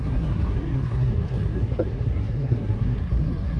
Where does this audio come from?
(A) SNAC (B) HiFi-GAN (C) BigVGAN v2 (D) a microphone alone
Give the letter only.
A